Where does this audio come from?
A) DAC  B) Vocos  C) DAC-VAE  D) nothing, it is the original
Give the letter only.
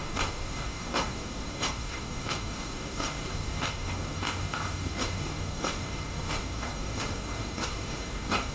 A